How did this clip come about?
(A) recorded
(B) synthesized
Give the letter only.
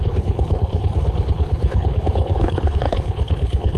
B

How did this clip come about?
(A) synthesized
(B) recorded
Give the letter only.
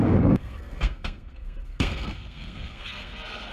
A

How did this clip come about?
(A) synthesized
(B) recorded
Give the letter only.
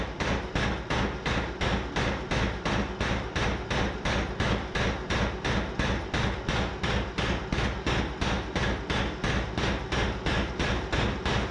B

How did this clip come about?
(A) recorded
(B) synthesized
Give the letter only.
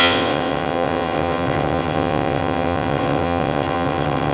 B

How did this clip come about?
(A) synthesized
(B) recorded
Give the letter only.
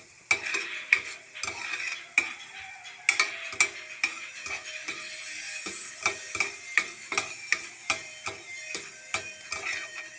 B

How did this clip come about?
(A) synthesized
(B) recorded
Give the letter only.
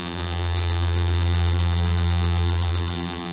A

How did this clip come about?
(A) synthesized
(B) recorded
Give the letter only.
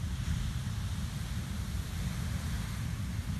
B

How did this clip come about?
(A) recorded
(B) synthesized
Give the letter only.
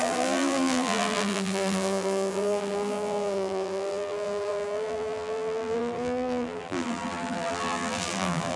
B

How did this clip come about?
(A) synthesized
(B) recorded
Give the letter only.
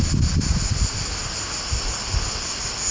B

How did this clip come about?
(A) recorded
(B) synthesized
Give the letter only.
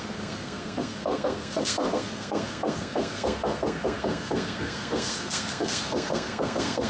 B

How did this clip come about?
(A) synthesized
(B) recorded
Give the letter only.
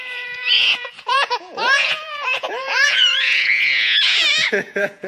A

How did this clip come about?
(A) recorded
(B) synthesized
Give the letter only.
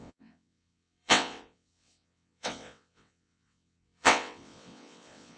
B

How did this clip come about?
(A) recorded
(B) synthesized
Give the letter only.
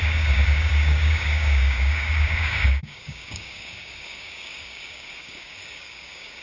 B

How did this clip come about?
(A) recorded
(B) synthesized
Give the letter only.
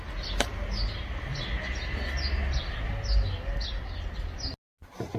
A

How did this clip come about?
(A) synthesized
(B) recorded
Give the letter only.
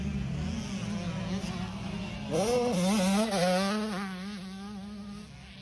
B